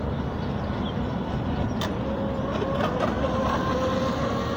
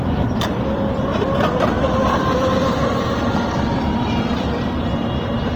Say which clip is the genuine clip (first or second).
first